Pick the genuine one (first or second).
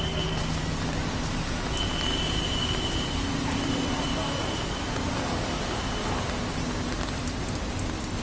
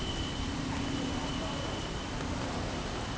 first